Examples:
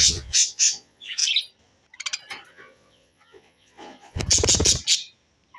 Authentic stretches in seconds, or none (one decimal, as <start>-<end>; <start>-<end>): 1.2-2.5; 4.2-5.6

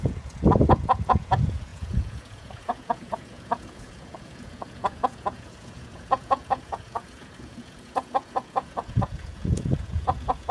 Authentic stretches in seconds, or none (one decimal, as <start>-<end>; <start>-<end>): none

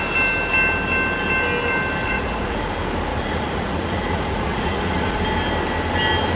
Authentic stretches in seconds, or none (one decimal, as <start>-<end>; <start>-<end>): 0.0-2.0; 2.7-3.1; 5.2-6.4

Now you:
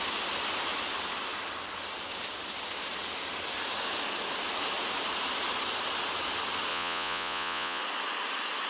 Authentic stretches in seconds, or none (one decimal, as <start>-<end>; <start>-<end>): 0.0-6.7; 7.8-8.7

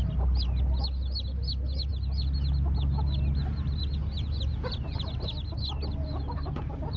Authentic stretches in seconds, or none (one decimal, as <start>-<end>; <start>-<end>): 0.0-7.0

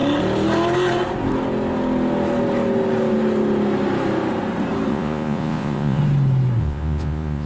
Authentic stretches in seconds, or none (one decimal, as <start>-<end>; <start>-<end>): 0.0-4.9; 6.0-6.6

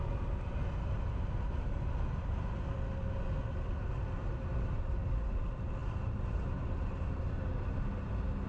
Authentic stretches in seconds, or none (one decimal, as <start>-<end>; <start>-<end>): 0.0-8.5

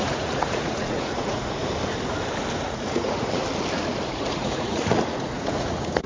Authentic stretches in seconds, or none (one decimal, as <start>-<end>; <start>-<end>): 1.6-2.5; 3.4-4.1